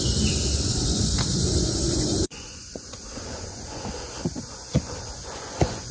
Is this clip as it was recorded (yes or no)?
no